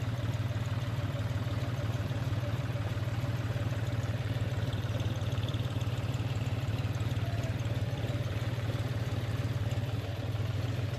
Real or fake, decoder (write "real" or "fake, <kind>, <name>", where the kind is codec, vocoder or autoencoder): fake, vocoder, BigVGAN v2